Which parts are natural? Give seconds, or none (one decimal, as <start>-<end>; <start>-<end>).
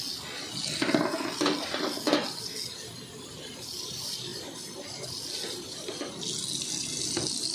0.0-7.5